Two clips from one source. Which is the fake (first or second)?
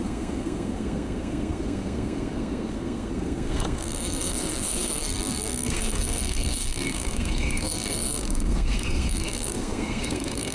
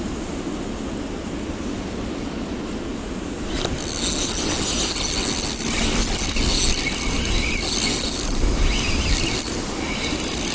first